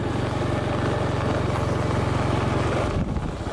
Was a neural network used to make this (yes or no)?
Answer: no